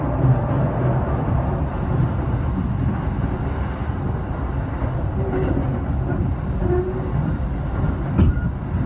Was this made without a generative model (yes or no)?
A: yes